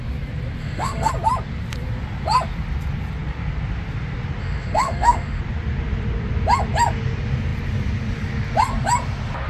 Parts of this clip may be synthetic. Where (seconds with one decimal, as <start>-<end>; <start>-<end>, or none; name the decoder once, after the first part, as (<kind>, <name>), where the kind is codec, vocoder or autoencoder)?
0.6-1.1 (autoencoder, DAC-VAE); 4.4-5.4